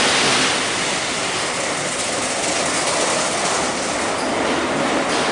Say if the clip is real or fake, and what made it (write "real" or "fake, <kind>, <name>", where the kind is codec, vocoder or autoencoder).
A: real